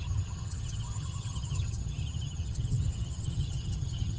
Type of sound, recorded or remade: remade